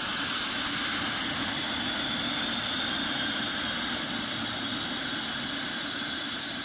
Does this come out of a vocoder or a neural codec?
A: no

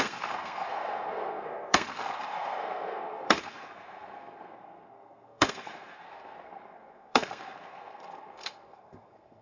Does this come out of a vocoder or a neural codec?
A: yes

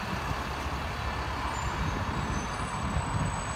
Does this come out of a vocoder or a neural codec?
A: no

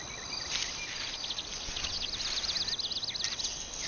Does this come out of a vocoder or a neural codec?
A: no